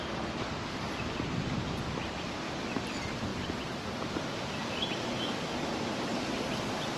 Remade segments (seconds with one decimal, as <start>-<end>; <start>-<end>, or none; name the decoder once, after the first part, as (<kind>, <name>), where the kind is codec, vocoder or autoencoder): none